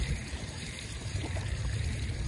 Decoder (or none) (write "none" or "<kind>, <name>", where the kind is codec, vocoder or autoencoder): vocoder, BigVGAN v2